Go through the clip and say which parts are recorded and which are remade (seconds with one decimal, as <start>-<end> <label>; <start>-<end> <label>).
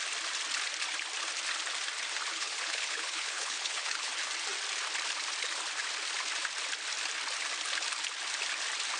0.0-2.3 recorded; 2.3-4.1 remade; 4.1-9.0 recorded